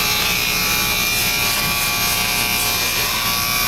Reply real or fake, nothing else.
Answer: real